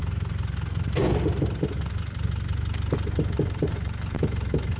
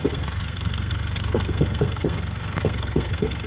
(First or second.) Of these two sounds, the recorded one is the first